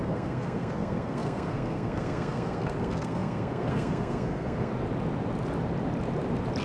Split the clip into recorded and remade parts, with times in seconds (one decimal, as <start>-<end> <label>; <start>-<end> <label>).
0.0-4.7 remade; 4.7-6.6 recorded